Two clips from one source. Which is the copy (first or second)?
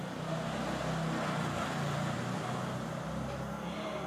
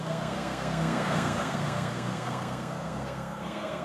second